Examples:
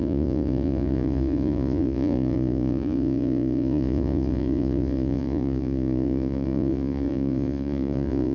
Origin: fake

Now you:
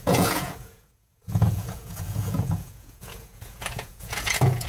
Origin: fake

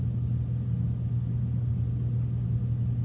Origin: real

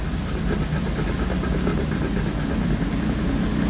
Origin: real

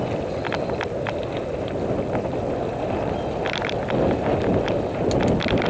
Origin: real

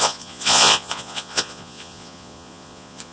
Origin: fake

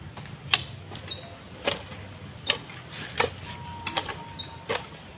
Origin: real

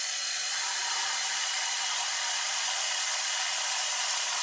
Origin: fake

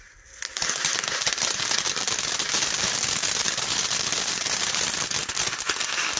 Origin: real